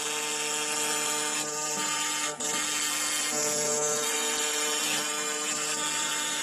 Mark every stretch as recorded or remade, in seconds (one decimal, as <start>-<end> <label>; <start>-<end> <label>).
0.0-6.4 recorded